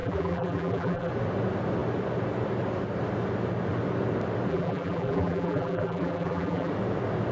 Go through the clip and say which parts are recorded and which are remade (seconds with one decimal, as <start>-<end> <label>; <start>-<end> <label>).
0.0-1.1 remade; 1.1-4.5 recorded; 4.5-6.7 remade; 6.7-7.3 recorded